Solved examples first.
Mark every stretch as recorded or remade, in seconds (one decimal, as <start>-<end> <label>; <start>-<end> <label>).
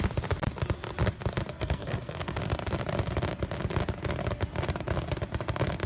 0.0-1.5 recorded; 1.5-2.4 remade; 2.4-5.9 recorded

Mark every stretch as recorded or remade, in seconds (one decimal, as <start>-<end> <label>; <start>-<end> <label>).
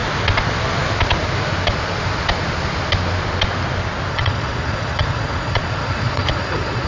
0.0-4.1 recorded; 4.1-6.9 remade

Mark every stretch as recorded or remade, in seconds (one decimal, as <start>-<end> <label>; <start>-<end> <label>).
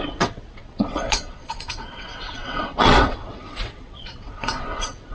0.0-5.1 remade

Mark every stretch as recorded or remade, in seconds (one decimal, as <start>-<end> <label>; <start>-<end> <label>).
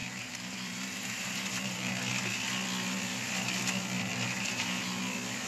0.0-1.9 remade; 1.9-4.1 recorded; 4.1-5.0 remade; 5.0-5.5 recorded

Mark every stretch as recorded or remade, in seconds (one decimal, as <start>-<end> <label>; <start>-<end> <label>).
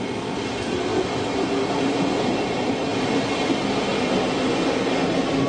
0.0-5.5 recorded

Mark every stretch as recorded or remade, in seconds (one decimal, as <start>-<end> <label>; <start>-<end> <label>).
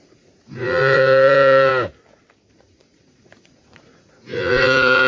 0.0-1.7 remade; 1.7-2.5 recorded; 2.5-5.1 remade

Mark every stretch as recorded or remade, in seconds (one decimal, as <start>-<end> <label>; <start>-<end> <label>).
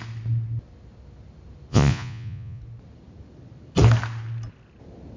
0.0-1.7 recorded; 1.7-2.6 remade; 2.6-5.2 recorded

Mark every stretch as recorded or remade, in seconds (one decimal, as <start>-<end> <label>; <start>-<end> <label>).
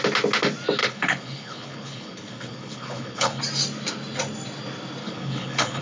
0.0-0.8 recorded; 0.8-3.4 remade; 3.4-5.0 recorded; 5.0-5.8 remade